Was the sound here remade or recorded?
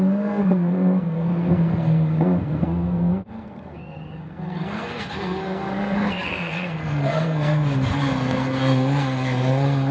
remade